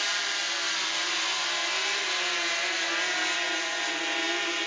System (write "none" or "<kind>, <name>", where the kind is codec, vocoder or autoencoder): none